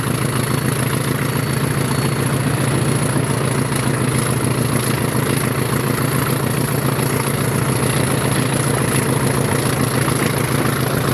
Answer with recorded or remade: recorded